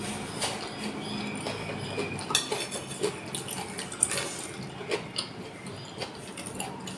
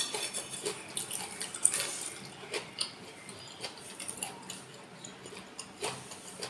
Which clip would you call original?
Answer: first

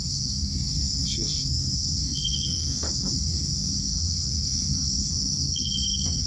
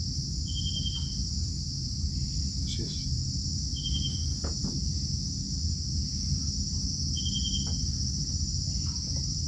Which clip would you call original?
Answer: second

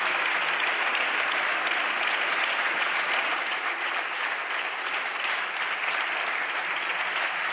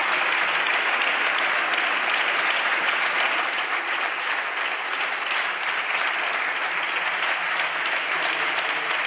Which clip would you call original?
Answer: second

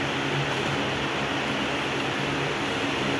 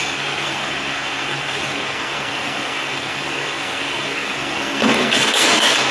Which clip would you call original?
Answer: first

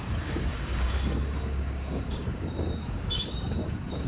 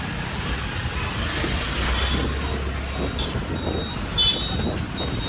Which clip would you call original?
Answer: second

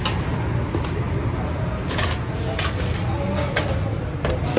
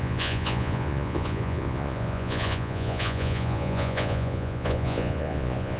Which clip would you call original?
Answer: first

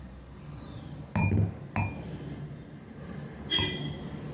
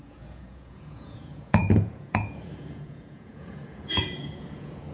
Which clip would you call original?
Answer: first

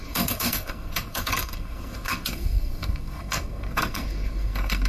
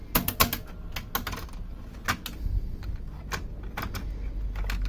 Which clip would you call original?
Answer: second